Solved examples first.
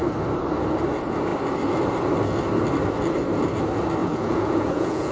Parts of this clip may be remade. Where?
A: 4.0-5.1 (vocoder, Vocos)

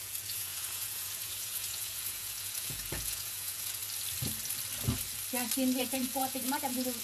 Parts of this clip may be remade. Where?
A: 0.0-3.8 (vocoder, Vocos); 5.8-7.0

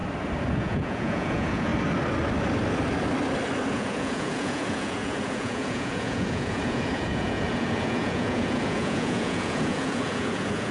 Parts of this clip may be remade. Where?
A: 0.6-1.7 (vocoder, Vocos); 3.7-10.7